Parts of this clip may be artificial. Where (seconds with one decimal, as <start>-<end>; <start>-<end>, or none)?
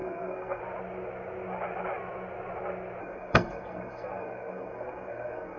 0.0-0.6; 3.0-5.6